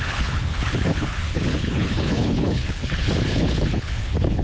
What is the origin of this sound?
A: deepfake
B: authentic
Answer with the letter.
A